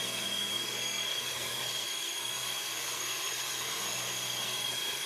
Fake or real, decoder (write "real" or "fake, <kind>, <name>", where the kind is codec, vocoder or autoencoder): fake, codec, SNAC